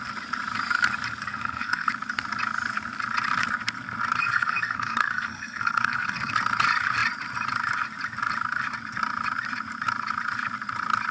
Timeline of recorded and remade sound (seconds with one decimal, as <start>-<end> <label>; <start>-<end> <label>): 0.0-1.2 recorded; 1.2-1.9 remade; 1.9-4.2 recorded; 4.2-6.3 remade; 6.3-11.1 recorded